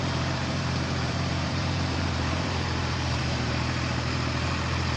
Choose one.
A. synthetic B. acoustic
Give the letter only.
A